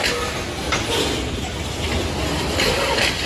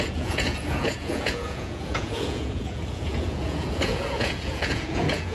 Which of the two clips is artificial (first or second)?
second